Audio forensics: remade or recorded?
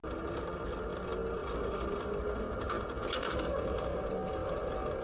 recorded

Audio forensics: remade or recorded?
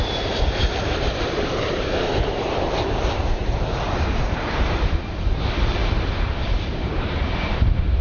remade